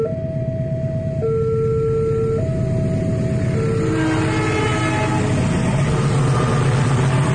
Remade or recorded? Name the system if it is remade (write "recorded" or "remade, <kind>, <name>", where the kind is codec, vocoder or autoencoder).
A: recorded